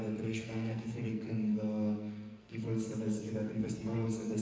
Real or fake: fake